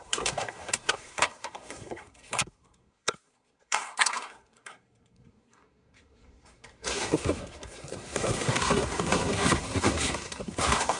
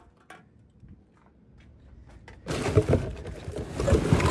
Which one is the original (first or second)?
second